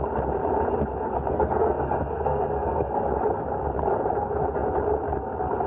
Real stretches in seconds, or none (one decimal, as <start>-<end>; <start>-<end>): 0.0-1.3; 3.0-5.7

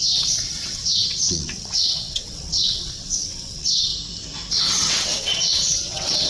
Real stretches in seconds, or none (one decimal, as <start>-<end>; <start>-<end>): 3.9-4.5

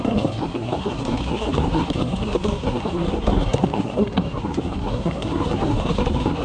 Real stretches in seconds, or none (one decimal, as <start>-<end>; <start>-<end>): none

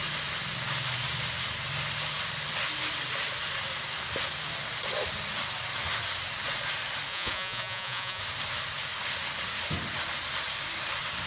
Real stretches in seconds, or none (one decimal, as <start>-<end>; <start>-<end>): 0.0-7.1; 8.2-11.3

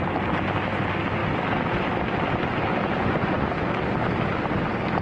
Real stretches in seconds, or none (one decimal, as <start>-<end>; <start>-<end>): 0.0-2.8; 3.5-5.0

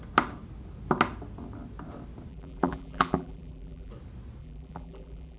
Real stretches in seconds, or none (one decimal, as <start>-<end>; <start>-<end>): 0.0-2.3; 3.9-4.4